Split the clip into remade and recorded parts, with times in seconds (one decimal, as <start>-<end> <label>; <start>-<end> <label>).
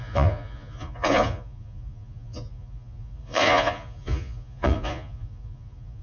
0.0-6.0 remade